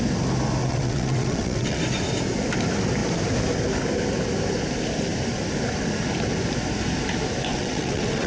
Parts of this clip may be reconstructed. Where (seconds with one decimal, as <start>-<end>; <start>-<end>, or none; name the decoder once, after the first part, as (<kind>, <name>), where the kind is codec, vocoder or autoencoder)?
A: 0.6-1.8 (vocoder, WaveNeXt); 7.5-8.3